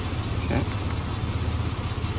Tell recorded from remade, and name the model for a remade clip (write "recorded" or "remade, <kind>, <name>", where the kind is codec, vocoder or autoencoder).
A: recorded